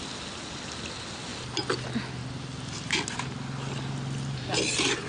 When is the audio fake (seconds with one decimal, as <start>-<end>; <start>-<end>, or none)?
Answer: none